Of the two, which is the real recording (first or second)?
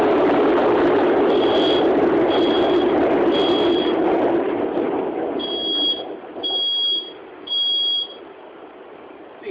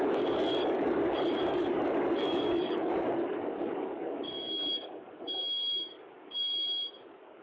first